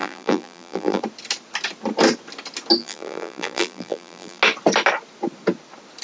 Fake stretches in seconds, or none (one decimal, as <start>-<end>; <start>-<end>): 0.0-1.0; 2.8-4.4